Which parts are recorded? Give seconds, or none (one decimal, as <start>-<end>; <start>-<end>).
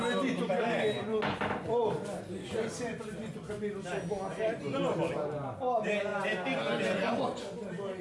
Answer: 0.0-1.8; 2.5-3.2; 3.9-8.0